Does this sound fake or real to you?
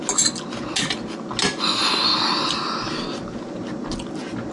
real